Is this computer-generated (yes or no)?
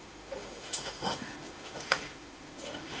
yes